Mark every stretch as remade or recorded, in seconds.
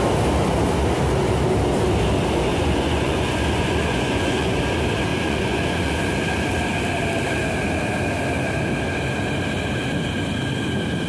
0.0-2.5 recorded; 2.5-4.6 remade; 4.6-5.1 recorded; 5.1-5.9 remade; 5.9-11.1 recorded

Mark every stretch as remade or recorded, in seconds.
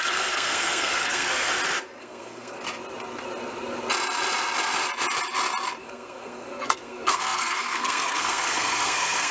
0.0-1.5 remade; 1.5-2.0 recorded; 2.0-2.6 remade; 2.6-5.8 recorded; 5.8-9.3 remade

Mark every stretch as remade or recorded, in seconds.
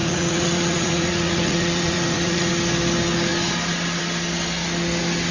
0.0-2.5 remade; 2.5-5.3 recorded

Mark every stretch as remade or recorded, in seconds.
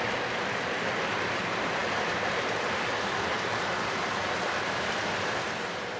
0.0-6.0 recorded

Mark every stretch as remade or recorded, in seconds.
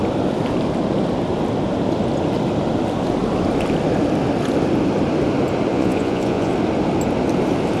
0.0-5.7 recorded; 5.7-6.5 remade; 6.5-7.8 recorded